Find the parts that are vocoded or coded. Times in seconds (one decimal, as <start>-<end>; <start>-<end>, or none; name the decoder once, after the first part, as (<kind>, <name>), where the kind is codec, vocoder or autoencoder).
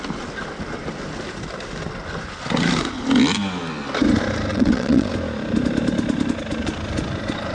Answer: 4.5-5.1 (vocoder, WaveNeXt)